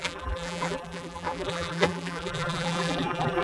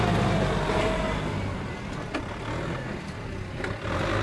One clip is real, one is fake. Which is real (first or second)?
second